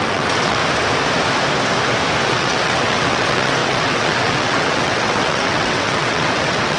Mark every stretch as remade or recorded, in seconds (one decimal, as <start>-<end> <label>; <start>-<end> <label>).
0.0-0.6 remade; 0.6-2.3 recorded; 2.3-6.8 remade